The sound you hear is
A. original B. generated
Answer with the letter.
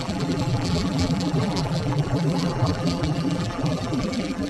B